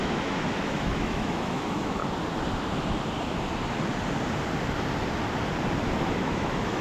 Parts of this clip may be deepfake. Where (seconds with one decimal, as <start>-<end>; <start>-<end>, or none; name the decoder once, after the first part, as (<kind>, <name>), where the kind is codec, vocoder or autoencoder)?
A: 0.0-2.0 (autoencoder, DAC-VAE); 6.1-6.8